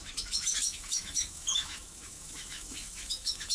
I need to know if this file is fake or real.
fake